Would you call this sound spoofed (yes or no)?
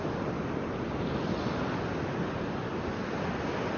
no